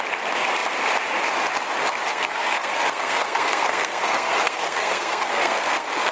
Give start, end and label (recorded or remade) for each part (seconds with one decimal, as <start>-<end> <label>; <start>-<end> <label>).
0.0-2.1 recorded; 2.1-6.1 remade